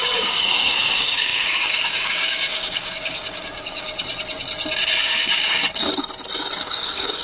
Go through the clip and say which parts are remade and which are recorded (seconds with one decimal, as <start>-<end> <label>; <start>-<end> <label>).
0.0-3.9 remade; 3.9-5.0 recorded; 5.0-5.6 remade; 5.6-6.6 recorded; 6.6-7.2 remade